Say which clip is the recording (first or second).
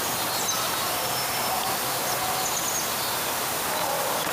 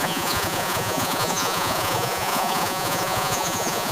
first